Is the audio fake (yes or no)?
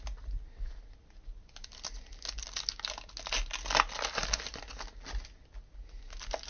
no